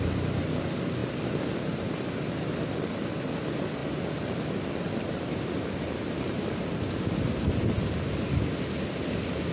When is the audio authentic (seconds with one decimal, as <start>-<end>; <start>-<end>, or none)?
0.0-3.8; 6.6-9.5